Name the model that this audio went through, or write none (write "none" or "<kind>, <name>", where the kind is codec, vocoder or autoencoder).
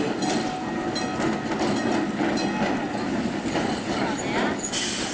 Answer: none